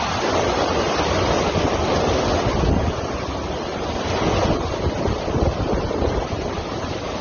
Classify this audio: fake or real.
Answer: real